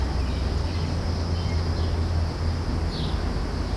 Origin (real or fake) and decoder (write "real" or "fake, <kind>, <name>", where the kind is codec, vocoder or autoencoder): real